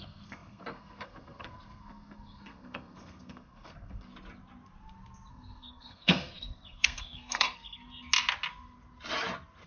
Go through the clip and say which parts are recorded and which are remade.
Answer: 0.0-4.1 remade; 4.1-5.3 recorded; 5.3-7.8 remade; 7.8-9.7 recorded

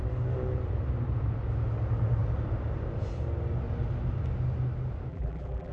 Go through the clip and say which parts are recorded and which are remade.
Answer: 0.0-5.1 recorded; 5.1-5.7 remade

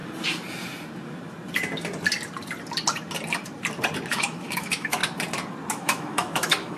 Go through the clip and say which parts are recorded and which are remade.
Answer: 0.0-4.1 recorded; 4.1-5.0 remade; 5.0-5.7 recorded; 5.7-6.8 remade

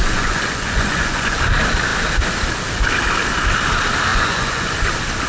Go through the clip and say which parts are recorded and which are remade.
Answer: 0.0-1.4 remade; 1.4-4.1 recorded; 4.1-4.7 remade; 4.7-5.3 recorded